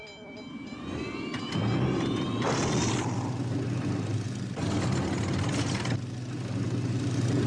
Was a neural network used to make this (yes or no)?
no